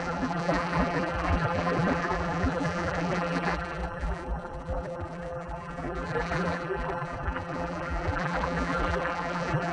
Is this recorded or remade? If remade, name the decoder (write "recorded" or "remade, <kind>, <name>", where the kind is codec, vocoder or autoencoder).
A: remade, vocoder, BigVGAN v2